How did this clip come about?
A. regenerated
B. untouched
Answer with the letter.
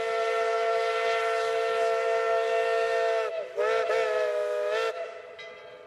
B